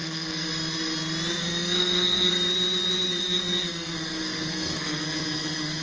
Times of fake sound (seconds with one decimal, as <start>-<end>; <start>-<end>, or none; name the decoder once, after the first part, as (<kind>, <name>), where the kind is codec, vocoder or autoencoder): 0.0-0.5 (codec, SNAC); 1.4-2.3; 3.2-5.8

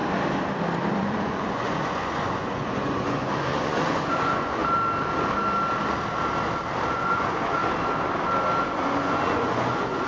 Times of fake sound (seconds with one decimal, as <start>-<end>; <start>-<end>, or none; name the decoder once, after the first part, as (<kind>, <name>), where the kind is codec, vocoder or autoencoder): 0.9-4.6 (vocoder, Vocos); 6.9-7.6; 8.6-10.1